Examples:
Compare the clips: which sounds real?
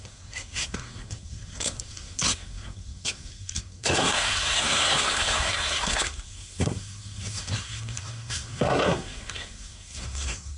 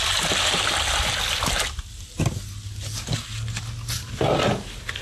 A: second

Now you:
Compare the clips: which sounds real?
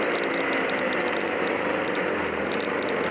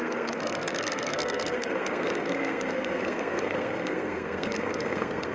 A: first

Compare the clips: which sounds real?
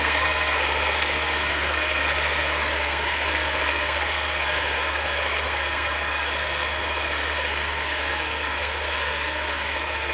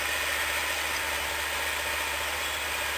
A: second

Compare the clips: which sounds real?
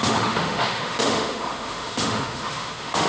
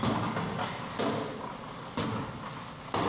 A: second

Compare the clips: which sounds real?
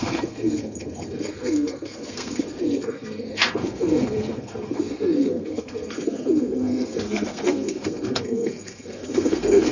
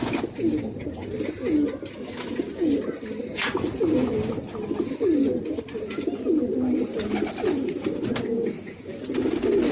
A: second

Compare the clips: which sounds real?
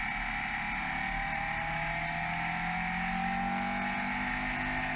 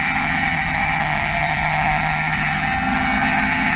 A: first